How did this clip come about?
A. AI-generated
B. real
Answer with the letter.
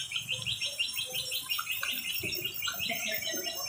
A